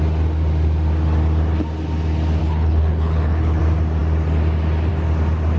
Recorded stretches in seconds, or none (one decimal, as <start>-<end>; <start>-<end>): 0.0-2.4; 3.6-5.6